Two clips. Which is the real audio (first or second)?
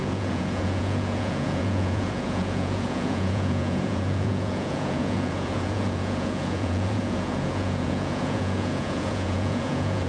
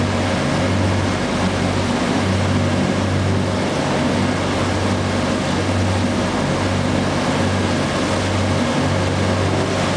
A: second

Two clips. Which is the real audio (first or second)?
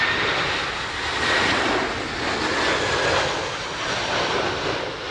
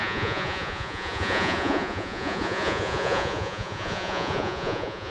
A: first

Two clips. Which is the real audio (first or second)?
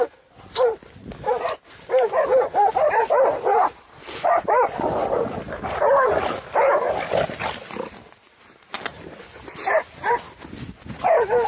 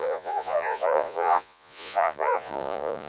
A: first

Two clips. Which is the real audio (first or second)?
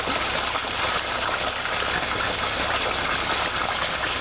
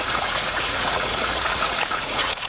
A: first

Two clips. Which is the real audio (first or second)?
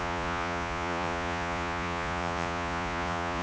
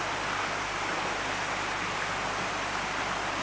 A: second